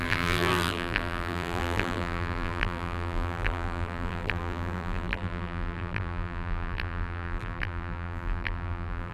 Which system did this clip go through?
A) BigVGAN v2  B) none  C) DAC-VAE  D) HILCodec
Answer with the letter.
A